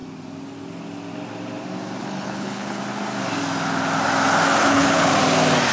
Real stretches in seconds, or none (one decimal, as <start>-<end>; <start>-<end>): 0.0-2.0; 2.8-4.6; 5.1-5.7